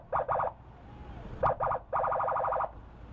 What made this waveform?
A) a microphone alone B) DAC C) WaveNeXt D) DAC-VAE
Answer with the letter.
A